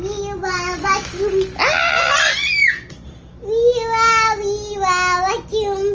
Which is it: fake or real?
real